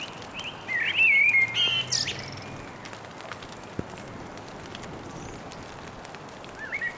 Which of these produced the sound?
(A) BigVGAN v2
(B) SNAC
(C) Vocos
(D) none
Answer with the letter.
D